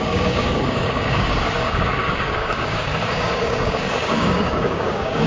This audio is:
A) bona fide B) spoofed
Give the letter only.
B